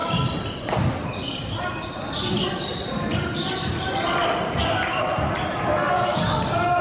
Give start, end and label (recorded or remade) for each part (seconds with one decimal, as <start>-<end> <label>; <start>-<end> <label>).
0.0-5.7 recorded; 5.7-6.2 remade; 6.2-6.8 recorded